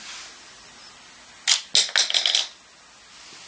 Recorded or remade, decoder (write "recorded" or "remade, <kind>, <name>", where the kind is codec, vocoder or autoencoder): recorded